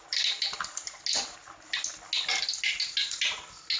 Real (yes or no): yes